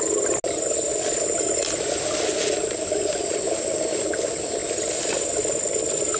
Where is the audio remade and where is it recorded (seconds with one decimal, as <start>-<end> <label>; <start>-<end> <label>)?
0.0-6.2 recorded